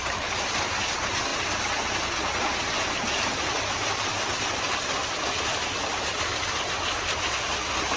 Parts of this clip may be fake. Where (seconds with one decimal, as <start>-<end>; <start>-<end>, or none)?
none